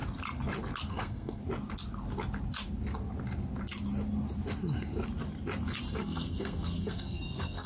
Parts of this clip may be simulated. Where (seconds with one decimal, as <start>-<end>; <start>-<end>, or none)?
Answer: 0.9-1.4; 6.0-7.7